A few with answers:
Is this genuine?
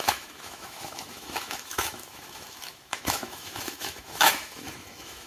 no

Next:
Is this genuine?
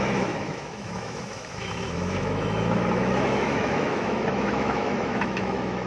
no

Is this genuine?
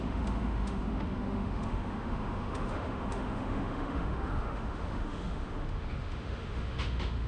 no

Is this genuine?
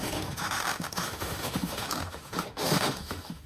no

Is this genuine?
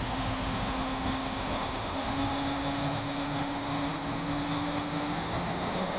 no